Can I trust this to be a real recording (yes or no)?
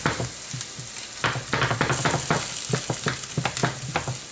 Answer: yes